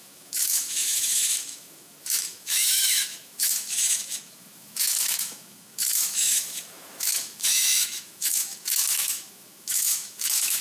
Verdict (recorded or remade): remade